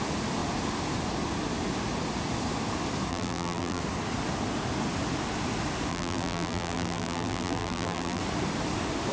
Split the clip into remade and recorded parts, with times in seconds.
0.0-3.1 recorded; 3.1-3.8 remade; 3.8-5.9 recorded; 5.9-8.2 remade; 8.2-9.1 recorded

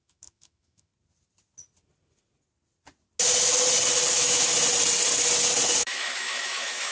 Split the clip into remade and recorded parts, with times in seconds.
0.0-0.9 remade; 0.9-4.1 recorded; 4.1-4.5 remade; 4.5-5.8 recorded; 5.8-6.9 remade

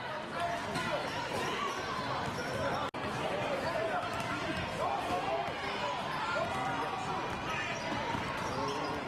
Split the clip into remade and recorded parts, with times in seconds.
0.0-1.0 recorded; 1.0-2.0 remade; 2.0-9.1 recorded

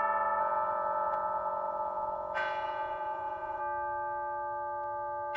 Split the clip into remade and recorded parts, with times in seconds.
0.0-0.4 recorded; 0.4-3.6 remade; 3.6-5.4 recorded

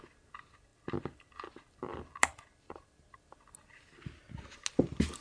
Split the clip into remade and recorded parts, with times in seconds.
0.0-5.2 recorded

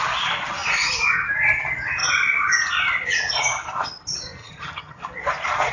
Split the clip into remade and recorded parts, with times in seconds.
0.0-4.4 recorded; 4.4-5.0 remade; 5.0-5.7 recorded

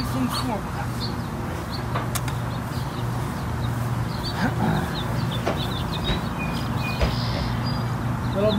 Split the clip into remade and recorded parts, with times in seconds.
0.0-8.6 recorded